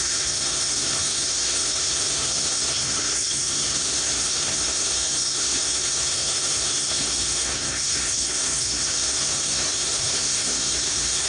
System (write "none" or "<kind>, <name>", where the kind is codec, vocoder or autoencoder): codec, SNAC